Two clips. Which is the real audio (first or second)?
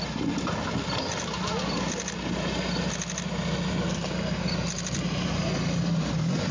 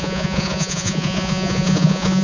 first